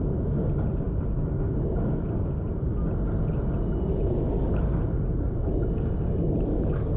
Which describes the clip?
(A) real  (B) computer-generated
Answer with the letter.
A